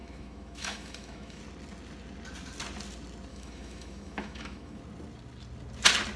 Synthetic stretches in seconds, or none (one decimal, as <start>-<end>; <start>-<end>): 0.0-1.4; 3.3-4.8